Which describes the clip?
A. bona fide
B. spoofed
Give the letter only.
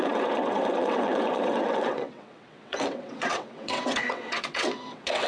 B